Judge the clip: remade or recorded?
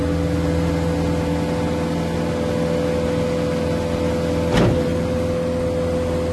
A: recorded